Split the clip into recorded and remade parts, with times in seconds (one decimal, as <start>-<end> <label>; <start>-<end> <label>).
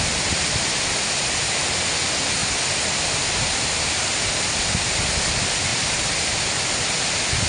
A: 0.0-0.7 recorded; 0.7-1.3 remade; 1.3-2.4 recorded; 2.4-5.3 remade; 5.3-5.7 recorded; 5.7-7.1 remade; 7.1-7.5 recorded